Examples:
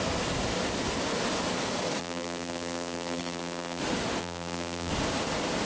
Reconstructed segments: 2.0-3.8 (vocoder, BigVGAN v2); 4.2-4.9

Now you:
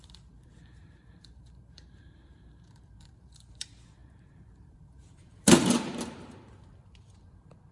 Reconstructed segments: 0.0-7.7 (vocoder, BigVGAN v2)

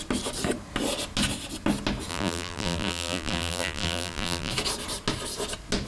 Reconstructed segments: 2.1-4.5 (vocoder, BigVGAN v2)